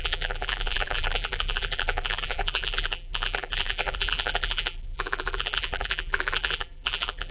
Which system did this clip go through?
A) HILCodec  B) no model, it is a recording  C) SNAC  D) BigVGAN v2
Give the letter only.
D